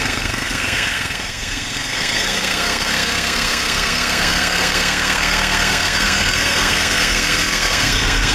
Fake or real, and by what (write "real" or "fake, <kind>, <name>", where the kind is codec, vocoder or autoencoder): fake, codec, SNAC